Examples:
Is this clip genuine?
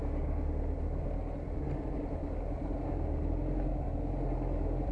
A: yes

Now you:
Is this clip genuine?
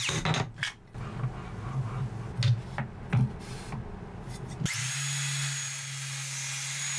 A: yes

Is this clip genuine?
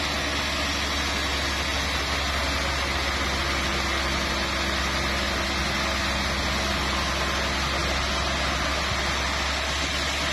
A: yes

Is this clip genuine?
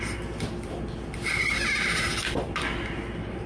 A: no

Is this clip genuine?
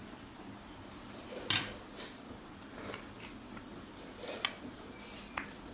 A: yes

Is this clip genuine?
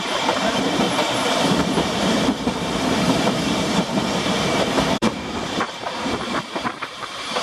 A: no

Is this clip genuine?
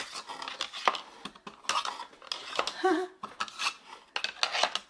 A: yes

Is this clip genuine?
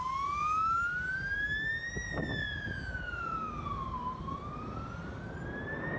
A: yes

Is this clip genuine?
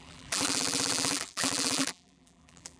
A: no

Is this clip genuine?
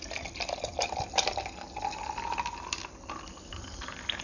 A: yes